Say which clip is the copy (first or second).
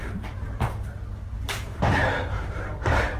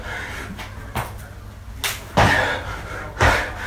first